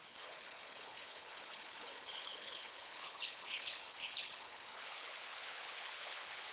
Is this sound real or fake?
fake